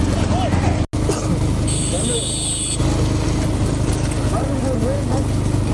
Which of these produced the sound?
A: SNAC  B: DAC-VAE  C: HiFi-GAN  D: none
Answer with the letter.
D